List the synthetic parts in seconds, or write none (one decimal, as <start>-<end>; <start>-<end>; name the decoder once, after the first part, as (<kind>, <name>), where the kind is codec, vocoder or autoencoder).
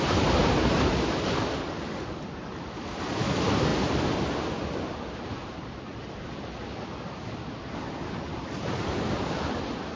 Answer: none